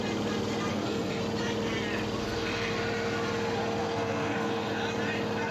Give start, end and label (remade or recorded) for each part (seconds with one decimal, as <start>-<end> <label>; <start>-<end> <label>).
0.0-0.7 recorded; 0.7-1.2 remade; 1.2-2.2 recorded; 2.2-2.7 remade; 2.7-3.8 recorded; 3.8-4.7 remade; 4.7-5.5 recorded